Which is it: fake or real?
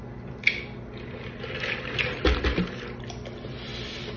real